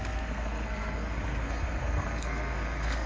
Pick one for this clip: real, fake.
fake